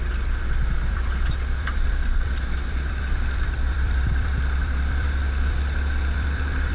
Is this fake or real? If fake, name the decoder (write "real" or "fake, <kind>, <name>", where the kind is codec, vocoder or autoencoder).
fake, vocoder, BigVGAN v2